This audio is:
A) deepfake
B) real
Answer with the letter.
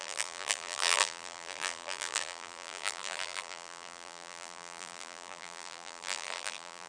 A